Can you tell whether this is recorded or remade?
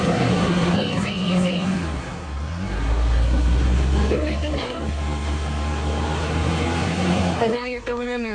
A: remade